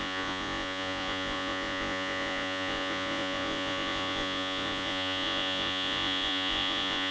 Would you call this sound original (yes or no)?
no